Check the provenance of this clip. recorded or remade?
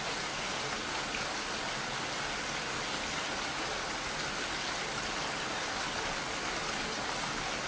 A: recorded